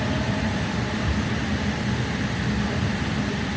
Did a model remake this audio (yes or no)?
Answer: no